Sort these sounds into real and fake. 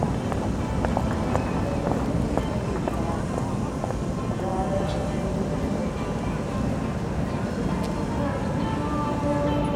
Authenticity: real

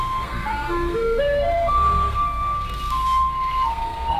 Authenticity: fake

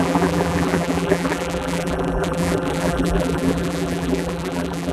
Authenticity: fake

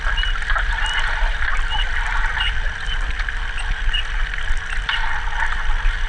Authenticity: real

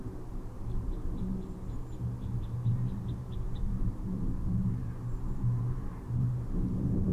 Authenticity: fake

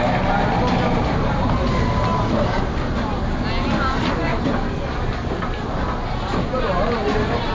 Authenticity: real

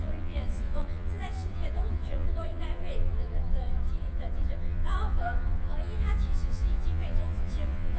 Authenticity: fake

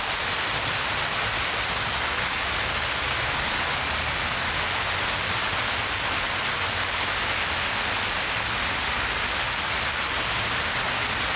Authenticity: real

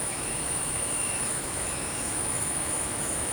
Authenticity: fake